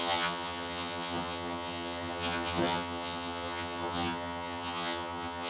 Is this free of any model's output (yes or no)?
no